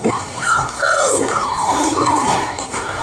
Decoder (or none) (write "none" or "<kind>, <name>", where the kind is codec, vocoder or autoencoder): codec, SNAC